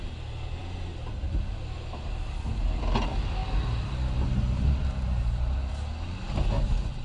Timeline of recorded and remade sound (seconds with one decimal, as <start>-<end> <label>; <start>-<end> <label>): 0.0-7.0 recorded